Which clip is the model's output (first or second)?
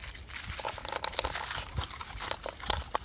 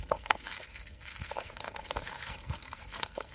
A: second